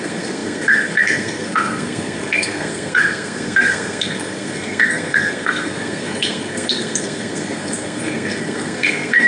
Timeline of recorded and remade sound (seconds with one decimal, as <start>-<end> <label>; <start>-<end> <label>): 0.0-9.3 remade

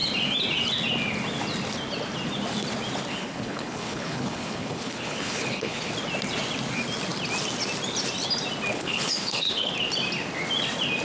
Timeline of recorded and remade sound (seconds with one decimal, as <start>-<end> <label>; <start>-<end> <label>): 0.0-3.1 recorded; 3.1-5.9 remade; 5.9-8.7 recorded; 8.7-9.7 remade; 9.7-11.0 recorded

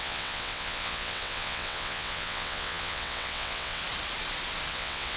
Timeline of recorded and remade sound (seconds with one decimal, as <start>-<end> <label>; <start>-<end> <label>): 0.0-3.8 remade; 3.8-4.7 recorded; 4.7-5.2 remade